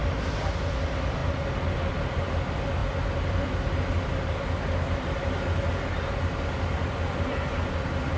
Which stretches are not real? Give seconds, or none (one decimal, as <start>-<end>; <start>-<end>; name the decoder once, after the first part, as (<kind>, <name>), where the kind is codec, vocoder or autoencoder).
none